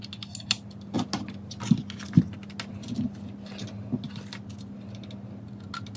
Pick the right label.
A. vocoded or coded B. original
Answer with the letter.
B